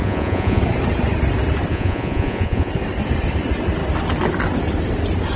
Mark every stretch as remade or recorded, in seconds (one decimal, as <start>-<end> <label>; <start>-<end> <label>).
0.0-0.6 remade; 0.6-1.7 recorded; 1.7-2.7 remade; 2.7-5.4 recorded